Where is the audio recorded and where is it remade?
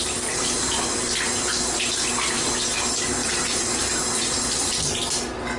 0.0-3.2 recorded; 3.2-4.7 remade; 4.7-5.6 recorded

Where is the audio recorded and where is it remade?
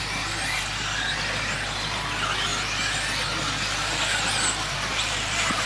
0.0-4.9 recorded; 4.9-5.7 remade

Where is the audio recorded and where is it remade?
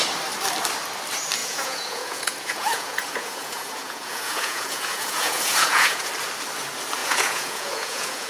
0.0-1.4 recorded; 1.4-6.1 remade; 6.1-7.0 recorded; 7.0-8.3 remade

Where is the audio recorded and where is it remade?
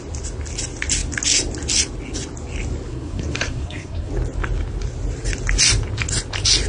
0.0-2.9 recorded; 2.9-4.1 remade; 4.1-6.7 recorded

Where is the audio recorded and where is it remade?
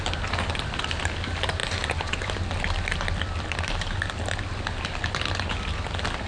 0.0-6.3 recorded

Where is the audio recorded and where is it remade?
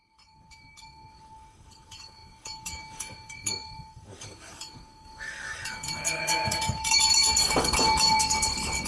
0.0-8.9 remade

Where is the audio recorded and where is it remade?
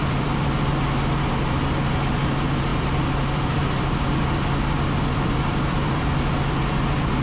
0.0-0.7 remade; 0.7-2.7 recorded; 2.7-6.0 remade; 6.0-7.2 recorded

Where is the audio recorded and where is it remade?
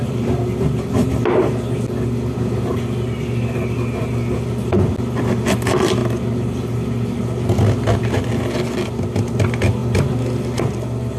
0.0-11.2 recorded